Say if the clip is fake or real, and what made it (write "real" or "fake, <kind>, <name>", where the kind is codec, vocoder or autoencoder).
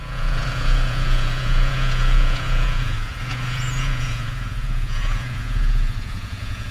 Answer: fake, vocoder, Vocos